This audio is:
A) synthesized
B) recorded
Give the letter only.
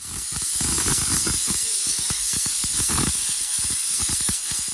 A